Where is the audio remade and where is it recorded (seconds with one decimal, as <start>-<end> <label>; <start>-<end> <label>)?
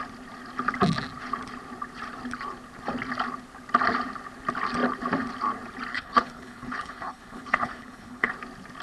0.0-5.9 recorded; 5.9-8.3 remade; 8.3-8.8 recorded